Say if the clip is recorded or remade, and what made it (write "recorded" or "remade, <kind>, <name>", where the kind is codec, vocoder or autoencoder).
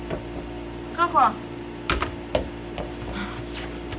recorded